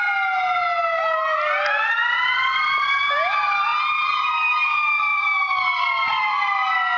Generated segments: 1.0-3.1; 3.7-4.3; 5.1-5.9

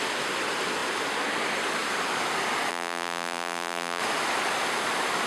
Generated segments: 2.7-4.0

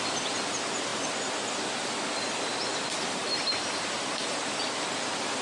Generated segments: 3.2-4.4

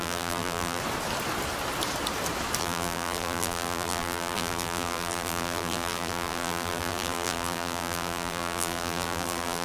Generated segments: 0.0-0.8; 2.6-9.6

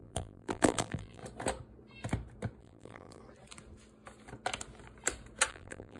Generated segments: 0.0-1.2; 2.6-3.2; 5.5-6.0

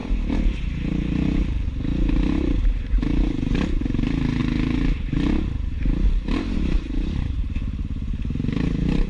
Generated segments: 0.0-1.9; 2.6-4.4; 6.1-9.1